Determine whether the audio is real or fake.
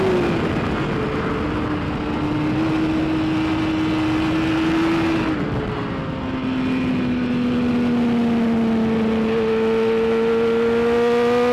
real